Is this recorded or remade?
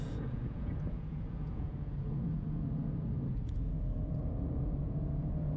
remade